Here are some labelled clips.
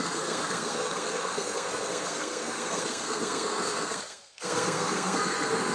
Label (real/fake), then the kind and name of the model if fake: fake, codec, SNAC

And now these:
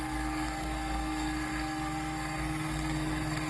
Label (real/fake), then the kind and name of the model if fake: fake, codec, SNAC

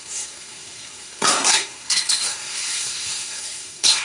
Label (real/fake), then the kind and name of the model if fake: fake, codec, SNAC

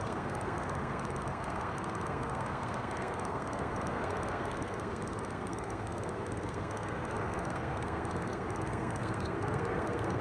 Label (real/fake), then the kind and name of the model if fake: fake, codec, SNAC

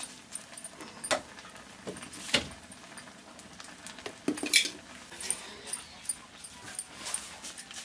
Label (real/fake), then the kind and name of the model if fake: real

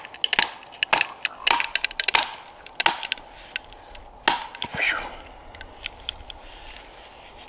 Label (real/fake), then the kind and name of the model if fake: real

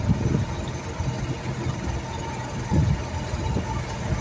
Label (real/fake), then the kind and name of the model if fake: real